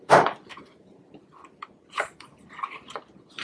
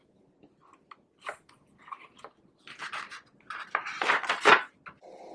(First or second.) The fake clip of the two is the first